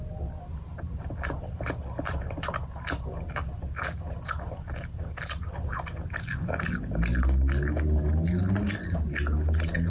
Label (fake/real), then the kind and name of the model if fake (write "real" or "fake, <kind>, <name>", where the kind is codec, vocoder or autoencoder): real